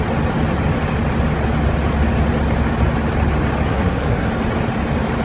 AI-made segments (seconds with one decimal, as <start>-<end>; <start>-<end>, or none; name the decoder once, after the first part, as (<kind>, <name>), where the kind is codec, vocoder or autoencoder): 3.7-4.3 (codec, SNAC)

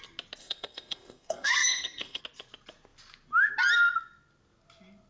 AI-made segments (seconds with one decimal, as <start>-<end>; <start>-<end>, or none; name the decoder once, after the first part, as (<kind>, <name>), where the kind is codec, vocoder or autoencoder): 0.4-2.2 (codec, SNAC)

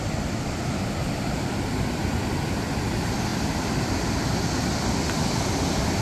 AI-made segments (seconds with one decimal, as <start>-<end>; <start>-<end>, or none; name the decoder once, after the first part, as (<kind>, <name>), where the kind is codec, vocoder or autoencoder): none

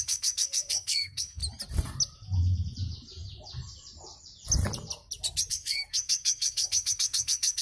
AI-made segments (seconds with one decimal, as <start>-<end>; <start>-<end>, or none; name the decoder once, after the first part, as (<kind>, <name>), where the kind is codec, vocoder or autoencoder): 0.0-1.4 (codec, SNAC); 5.5-7.6

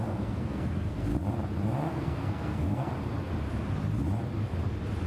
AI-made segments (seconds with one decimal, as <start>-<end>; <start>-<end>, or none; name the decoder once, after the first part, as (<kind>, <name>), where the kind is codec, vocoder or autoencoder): 0.0-1.1 (codec, SNAC); 1.9-2.9

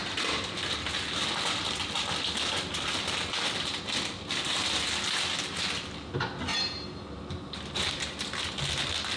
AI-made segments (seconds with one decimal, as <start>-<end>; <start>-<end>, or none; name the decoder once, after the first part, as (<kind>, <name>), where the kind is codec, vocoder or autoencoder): none

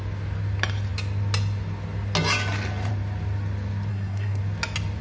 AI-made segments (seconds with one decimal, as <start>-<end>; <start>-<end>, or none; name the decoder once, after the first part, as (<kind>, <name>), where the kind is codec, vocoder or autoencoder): 3.9-4.4 (codec, SNAC)

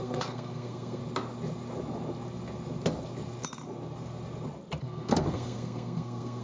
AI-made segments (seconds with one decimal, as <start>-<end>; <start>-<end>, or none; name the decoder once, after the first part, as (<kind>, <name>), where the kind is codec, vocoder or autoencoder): 0.0-1.0 (codec, SNAC); 4.8-6.4